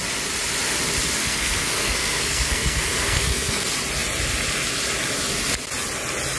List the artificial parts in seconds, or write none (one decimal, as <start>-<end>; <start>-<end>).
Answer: 1.2-3.6